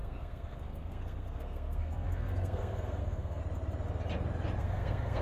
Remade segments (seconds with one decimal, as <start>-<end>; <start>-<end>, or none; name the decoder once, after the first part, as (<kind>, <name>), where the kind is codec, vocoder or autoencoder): 0.0-3.4 (codec, SNAC); 4.6-5.2

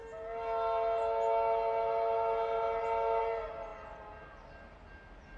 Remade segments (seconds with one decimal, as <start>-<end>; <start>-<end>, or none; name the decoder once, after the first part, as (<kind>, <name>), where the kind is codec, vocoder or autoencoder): none